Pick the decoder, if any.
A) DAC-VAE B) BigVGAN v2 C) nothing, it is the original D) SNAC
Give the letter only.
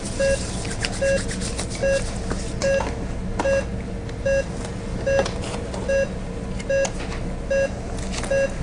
C